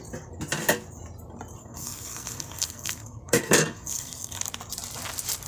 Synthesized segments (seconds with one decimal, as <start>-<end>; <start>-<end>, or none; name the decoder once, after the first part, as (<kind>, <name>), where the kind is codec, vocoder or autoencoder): 1.6-4.4 (codec, SNAC)